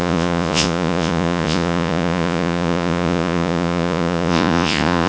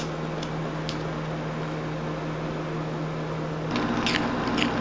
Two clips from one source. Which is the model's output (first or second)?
first